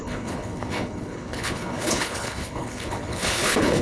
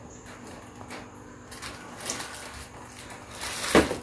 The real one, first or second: second